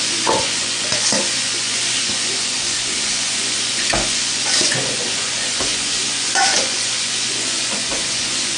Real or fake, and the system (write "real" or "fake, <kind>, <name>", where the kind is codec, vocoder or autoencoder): fake, vocoder, Vocos